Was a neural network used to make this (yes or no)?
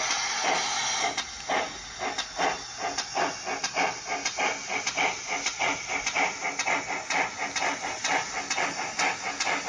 no